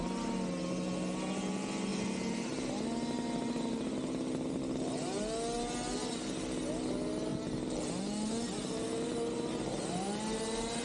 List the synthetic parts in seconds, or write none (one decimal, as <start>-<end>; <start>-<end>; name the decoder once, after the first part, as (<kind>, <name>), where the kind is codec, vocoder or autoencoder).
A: none